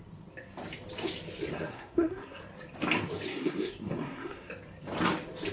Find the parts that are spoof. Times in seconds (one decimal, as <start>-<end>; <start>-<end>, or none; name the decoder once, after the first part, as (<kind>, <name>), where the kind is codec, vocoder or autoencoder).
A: 1.5-2.4 (codec, SNAC); 3.3-4.5